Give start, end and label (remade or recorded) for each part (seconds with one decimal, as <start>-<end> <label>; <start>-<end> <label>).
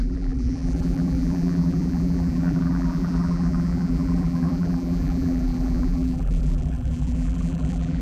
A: 0.0-8.0 remade